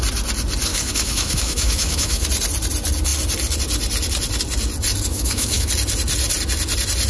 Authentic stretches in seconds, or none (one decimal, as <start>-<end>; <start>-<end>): 0.0-0.7; 2.3-5.1; 5.7-7.1